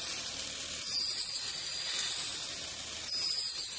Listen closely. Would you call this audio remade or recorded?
recorded